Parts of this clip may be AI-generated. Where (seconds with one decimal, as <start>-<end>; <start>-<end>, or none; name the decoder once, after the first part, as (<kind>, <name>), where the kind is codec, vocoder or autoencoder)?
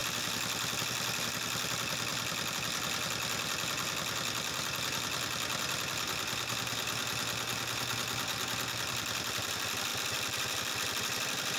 0.0-2.1 (vocoder, BigVGAN v2); 6.5-11.6